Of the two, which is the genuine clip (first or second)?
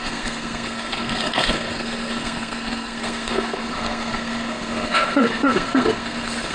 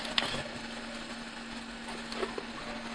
second